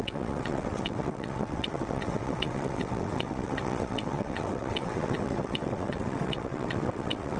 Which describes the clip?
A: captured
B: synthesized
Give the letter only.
B